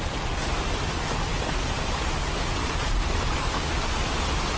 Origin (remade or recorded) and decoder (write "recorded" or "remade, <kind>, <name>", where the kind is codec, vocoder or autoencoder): recorded